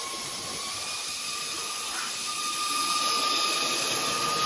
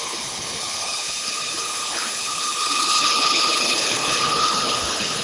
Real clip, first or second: first